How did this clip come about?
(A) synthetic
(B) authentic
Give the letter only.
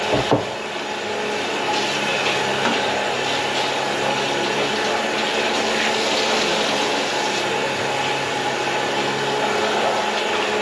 B